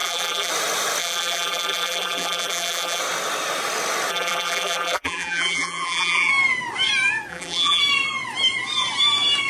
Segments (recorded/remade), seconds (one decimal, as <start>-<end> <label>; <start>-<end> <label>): 0.0-0.5 remade; 0.5-1.0 recorded; 1.0-3.0 remade; 3.0-4.1 recorded; 4.1-6.3 remade; 6.3-7.3 recorded; 7.3-7.8 remade; 7.8-9.5 recorded

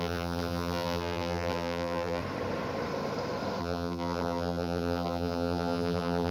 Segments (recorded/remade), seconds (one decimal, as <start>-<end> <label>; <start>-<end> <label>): 0.0-2.2 remade; 2.2-3.6 recorded; 3.6-6.3 remade

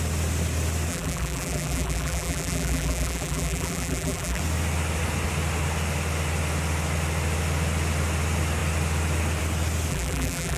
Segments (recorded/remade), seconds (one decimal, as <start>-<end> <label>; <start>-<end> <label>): 0.0-0.9 recorded; 0.9-4.4 remade; 4.4-9.9 recorded; 9.9-10.6 remade

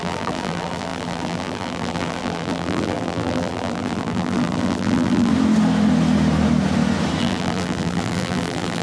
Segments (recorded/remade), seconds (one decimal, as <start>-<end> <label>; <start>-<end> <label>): 0.0-5.3 remade; 5.3-7.2 recorded; 7.2-8.8 remade

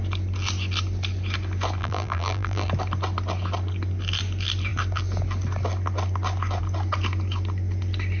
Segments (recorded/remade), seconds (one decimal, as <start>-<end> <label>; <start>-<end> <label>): 0.0-1.8 recorded; 1.8-2.7 remade; 2.7-8.2 recorded

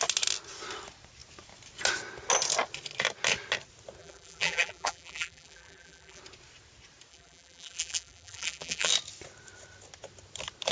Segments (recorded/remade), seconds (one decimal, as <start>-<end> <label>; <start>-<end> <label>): 0.0-4.0 recorded; 4.0-6.2 remade; 6.2-7.1 recorded; 7.1-8.9 remade; 8.9-10.7 recorded

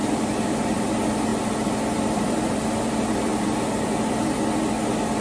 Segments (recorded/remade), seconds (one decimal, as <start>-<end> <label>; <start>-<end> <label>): 0.0-1.3 remade; 1.3-2.0 recorded; 2.0-3.3 remade; 3.3-5.2 recorded

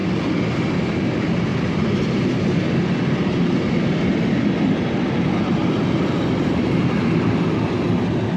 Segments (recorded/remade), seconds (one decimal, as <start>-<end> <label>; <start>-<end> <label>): 0.0-5.6 recorded; 5.6-7.3 remade; 7.3-8.4 recorded